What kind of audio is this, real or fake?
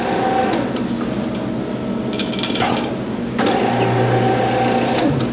real